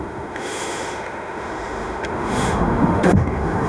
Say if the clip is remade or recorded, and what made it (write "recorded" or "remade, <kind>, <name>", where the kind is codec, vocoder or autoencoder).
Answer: remade, autoencoder, DAC-VAE